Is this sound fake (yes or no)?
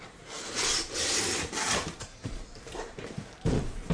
yes